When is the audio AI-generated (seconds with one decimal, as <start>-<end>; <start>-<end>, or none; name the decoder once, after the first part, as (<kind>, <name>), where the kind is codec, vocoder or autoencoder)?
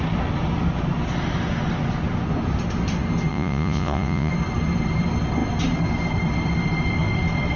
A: 3.3-4.3 (vocoder, Vocos)